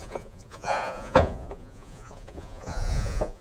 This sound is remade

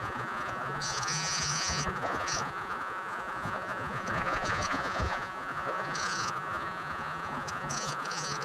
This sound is remade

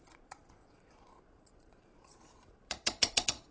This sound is remade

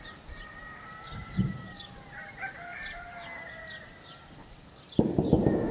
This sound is recorded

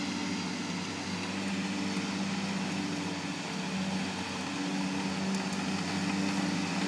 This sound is recorded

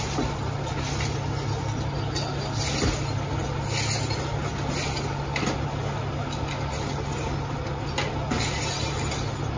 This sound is recorded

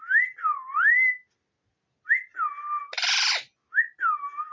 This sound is recorded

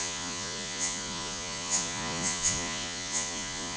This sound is remade